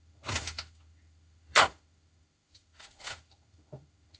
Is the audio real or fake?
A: fake